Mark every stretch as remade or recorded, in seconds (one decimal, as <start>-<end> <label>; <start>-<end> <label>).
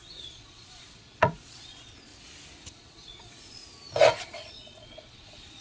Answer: 0.0-2.1 remade; 2.1-2.7 recorded; 2.7-3.6 remade; 3.6-4.2 recorded; 4.2-5.6 remade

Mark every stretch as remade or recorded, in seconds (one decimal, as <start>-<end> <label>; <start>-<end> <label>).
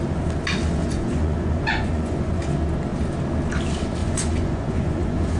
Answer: 0.0-0.8 recorded; 0.8-2.4 remade; 2.4-4.0 recorded; 4.0-5.4 remade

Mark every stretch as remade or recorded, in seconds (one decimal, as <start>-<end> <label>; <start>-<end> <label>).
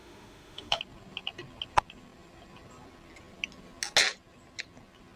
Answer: 0.0-0.8 remade; 0.8-5.2 recorded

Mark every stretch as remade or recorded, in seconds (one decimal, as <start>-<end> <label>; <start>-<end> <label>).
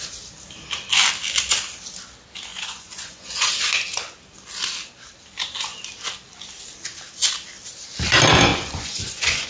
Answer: 0.0-2.5 recorded; 2.5-3.5 remade; 3.5-8.5 recorded; 8.5-9.5 remade